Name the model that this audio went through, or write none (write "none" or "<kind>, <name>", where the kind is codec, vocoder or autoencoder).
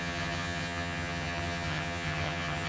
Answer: vocoder, HiFi-GAN